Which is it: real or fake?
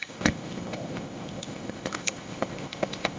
fake